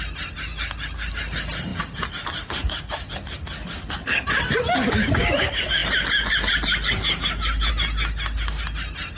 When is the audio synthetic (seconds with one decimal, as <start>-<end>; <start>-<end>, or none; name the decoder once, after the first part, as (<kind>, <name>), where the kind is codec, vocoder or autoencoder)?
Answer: none